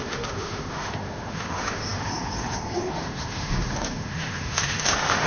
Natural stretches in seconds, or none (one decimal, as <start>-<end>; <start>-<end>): none